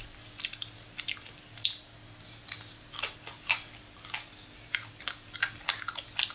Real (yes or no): yes